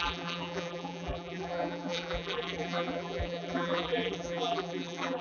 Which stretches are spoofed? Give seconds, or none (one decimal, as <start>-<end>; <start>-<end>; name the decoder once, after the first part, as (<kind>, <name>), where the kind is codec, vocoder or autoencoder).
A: 0.0-5.2 (vocoder, BigVGAN v2)